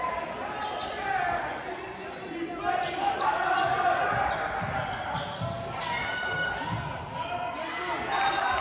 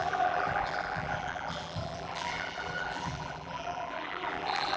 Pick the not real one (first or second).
second